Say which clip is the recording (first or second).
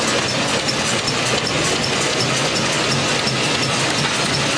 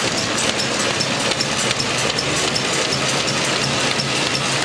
second